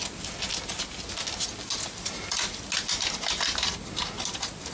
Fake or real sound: real